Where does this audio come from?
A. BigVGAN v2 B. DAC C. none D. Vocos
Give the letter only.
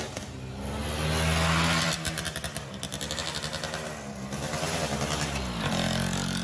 C